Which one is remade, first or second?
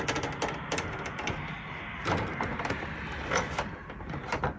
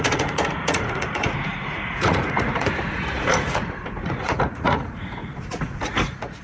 second